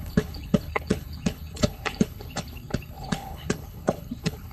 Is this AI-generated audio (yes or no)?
yes